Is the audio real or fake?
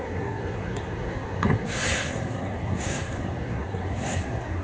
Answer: fake